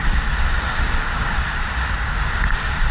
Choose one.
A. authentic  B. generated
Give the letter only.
A